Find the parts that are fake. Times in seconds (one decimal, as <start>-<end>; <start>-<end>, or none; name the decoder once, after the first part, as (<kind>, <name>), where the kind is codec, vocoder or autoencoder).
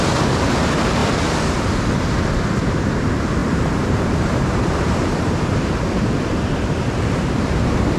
0.0-1.0 (vocoder, BigVGAN v2); 2.9-8.0